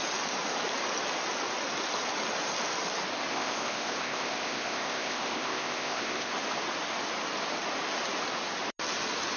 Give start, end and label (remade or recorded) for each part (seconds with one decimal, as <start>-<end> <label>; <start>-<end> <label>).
0.0-3.3 recorded; 3.3-6.3 remade; 6.3-9.4 recorded